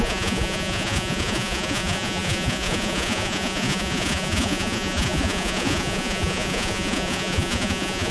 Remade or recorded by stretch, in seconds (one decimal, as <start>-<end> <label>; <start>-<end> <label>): 0.0-8.1 remade